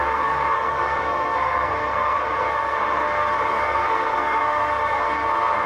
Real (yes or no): no